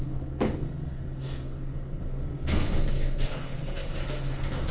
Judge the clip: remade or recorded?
remade